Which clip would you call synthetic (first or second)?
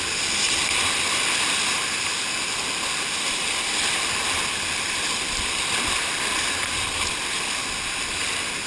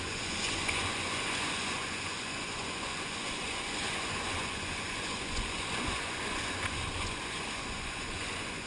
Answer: second